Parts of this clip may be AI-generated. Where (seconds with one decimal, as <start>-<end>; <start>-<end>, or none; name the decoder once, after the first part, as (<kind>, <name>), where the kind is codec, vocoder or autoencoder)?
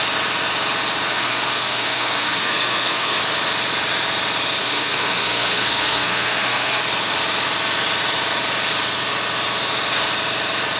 1.1-3.2 (codec, SNAC); 4.6-6.8